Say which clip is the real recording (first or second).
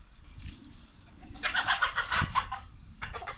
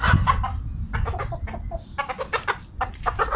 second